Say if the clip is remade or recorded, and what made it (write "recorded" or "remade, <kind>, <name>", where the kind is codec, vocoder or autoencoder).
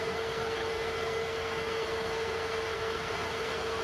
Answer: remade, codec, SNAC